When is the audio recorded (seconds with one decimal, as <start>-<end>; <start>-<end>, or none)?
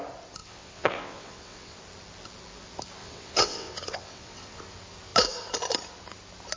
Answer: 0.0-0.4; 1.8-3.0; 4.6-6.6